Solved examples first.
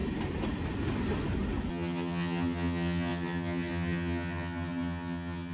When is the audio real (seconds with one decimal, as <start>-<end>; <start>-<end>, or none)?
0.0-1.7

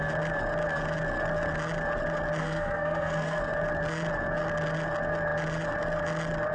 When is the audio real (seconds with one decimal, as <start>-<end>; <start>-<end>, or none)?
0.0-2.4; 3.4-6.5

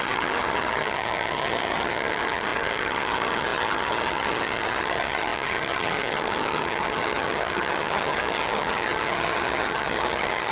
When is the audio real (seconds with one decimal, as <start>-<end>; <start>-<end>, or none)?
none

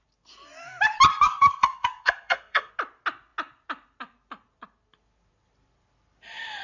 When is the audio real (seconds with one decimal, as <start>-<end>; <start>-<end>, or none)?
0.0-1.1; 2.7-6.6